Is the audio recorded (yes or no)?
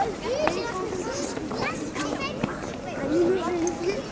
yes